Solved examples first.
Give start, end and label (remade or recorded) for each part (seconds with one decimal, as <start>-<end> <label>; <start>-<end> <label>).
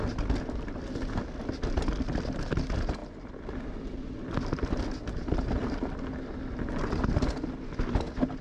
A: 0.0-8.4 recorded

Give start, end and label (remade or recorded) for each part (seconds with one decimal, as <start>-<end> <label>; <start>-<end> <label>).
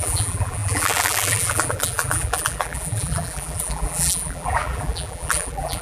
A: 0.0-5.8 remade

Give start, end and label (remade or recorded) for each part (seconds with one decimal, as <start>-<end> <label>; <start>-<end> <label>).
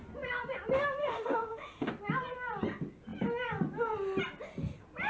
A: 0.0-1.0 recorded; 1.0-1.9 remade; 1.9-5.1 recorded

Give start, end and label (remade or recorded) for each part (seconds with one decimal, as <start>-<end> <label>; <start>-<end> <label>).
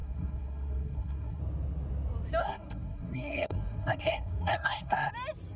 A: 0.0-1.4 remade; 1.4-2.4 recorded; 2.4-5.1 remade; 5.1-5.6 recorded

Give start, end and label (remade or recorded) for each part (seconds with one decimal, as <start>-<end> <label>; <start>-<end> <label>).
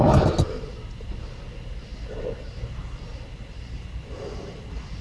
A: 0.0-5.0 recorded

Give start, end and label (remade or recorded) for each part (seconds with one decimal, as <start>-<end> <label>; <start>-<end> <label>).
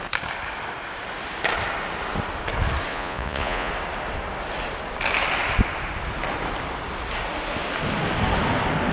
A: 0.0-2.9 recorded; 2.9-3.7 remade; 3.7-8.9 recorded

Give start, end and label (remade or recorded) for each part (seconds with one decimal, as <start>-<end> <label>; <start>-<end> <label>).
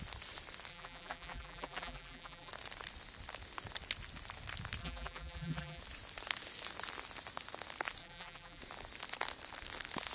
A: 0.0-0.7 recorded; 0.7-2.5 remade; 2.5-4.8 recorded; 4.8-5.8 remade; 5.8-8.0 recorded; 8.0-8.6 remade; 8.6-10.1 recorded